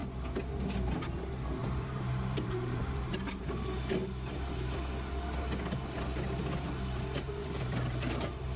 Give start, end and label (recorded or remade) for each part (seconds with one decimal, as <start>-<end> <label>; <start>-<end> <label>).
0.0-1.6 recorded; 1.6-3.0 remade; 3.0-7.4 recorded; 7.4-8.6 remade